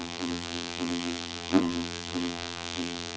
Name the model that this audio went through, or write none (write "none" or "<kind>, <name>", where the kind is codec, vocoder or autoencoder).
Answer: vocoder, BigVGAN v2